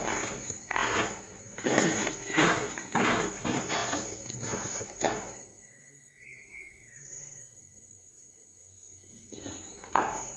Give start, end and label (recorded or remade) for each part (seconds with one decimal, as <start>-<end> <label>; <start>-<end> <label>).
0.0-10.4 remade